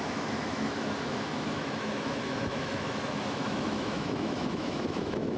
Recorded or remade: remade